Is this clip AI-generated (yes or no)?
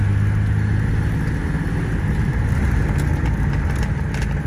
no